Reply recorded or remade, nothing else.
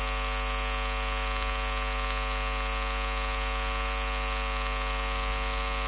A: recorded